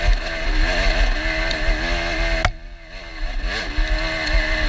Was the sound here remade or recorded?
recorded